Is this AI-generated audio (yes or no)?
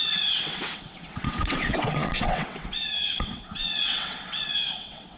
yes